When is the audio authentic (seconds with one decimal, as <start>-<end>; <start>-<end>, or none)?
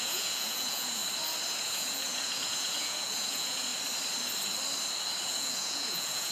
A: 1.0-1.6; 3.7-5.3